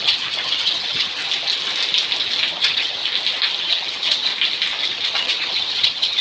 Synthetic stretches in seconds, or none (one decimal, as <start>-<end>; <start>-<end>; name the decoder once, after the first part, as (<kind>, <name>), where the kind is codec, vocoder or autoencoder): 0.0-1.2 (vocoder, HiFi-GAN); 2.5-3.0; 3.6-4.3; 4.8-6.2